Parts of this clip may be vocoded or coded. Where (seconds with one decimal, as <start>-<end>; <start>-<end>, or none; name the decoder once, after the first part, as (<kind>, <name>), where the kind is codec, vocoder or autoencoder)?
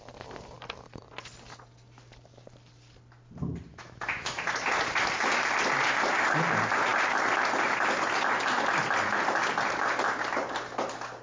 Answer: 3.7-4.4 (autoencoder, DAC-VAE)